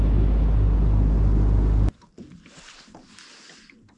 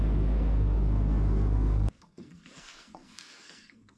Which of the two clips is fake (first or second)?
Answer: second